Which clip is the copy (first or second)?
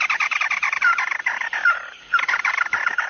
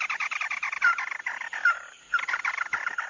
first